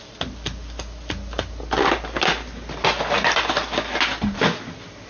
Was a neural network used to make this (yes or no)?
no